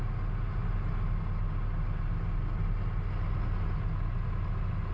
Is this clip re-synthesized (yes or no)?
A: no